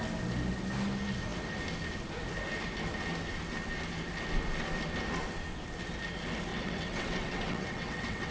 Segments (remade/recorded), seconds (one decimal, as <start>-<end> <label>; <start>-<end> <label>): 0.0-6.5 recorded; 6.5-8.3 remade